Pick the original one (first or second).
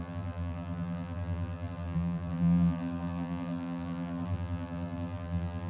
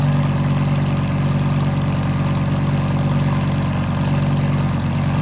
second